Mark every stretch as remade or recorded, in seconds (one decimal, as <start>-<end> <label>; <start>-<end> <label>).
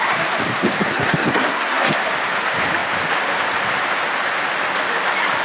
0.0-0.8 recorded; 0.8-1.9 remade; 1.9-5.4 recorded